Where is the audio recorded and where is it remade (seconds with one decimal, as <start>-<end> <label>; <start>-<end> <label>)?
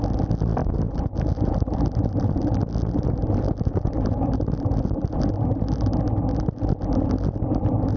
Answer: 0.0-0.6 recorded; 0.6-2.4 remade; 2.4-3.2 recorded; 3.2-5.3 remade; 5.3-8.0 recorded